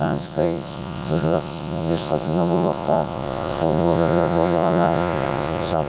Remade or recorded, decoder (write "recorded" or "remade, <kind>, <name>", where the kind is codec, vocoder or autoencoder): remade, vocoder, Vocos